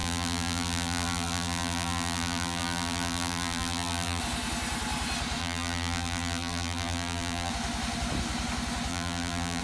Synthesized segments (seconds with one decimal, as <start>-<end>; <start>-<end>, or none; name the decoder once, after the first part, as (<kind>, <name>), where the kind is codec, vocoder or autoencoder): 0.0-4.2 (vocoder, BigVGAN v2); 5.4-7.5; 8.9-9.6